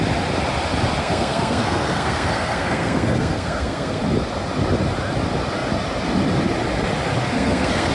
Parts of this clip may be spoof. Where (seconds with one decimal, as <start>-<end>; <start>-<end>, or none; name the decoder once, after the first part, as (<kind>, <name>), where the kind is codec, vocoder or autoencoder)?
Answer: 1.0-4.0 (codec, SNAC); 7.2-7.9